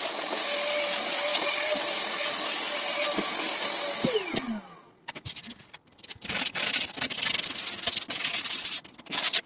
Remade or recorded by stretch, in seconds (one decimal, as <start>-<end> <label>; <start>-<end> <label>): 0.0-9.5 recorded